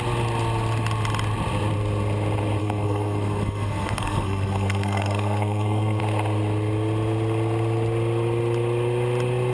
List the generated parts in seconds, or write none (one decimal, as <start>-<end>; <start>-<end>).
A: 2.6-6.0